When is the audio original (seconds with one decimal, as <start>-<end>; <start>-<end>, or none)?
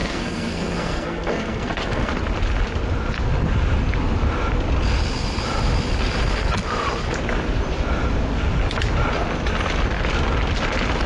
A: 2.1-11.1